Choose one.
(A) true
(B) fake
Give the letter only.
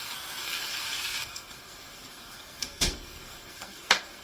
B